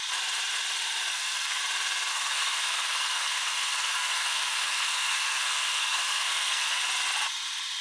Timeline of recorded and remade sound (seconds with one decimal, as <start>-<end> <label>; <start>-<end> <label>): 0.0-1.1 recorded; 1.1-1.6 remade; 1.6-2.1 recorded; 2.1-6.8 remade; 6.8-7.8 recorded